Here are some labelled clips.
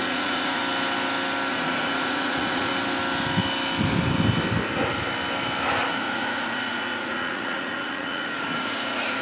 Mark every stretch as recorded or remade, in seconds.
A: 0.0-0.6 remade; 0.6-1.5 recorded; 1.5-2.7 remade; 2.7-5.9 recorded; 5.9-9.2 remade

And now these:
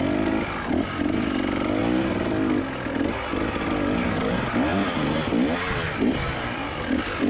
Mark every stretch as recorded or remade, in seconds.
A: 0.0-7.3 recorded

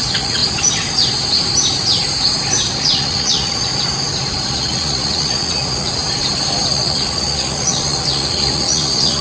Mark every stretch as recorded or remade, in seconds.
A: 0.0-0.4 remade; 0.4-2.8 recorded; 2.8-3.7 remade; 3.7-4.5 recorded; 4.5-6.0 remade; 6.0-6.7 recorded; 6.7-9.2 remade

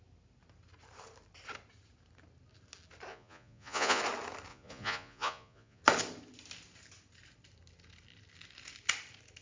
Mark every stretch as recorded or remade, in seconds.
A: 0.0-3.1 recorded; 3.1-4.0 remade; 4.0-4.5 recorded; 4.5-5.8 remade; 5.8-9.4 recorded

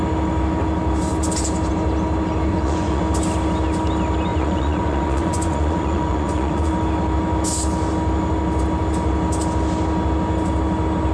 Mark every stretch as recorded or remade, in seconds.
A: 0.0-2.5 recorded; 2.5-3.0 remade; 3.0-4.3 recorded; 4.3-6.7 remade; 6.7-11.1 recorded